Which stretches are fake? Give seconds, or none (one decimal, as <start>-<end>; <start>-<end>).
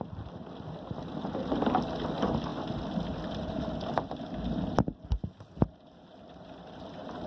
none